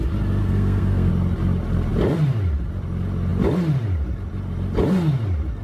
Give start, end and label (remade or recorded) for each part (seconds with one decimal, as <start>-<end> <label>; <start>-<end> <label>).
0.0-0.4 recorded; 0.4-1.1 remade; 1.1-5.6 recorded